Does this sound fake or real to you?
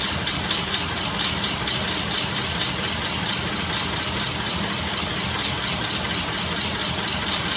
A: real